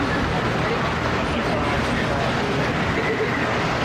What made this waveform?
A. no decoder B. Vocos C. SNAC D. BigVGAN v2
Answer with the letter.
A